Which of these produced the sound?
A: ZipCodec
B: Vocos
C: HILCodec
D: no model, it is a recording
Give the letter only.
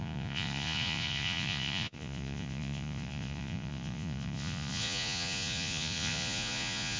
B